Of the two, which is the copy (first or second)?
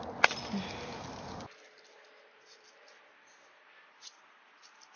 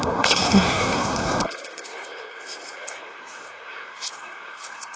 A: second